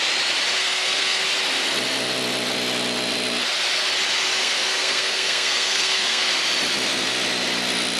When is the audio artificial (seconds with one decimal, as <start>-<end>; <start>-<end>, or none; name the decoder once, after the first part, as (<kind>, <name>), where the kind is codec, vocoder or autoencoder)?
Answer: 0.6-1.2 (codec, SNAC); 4.4-6.3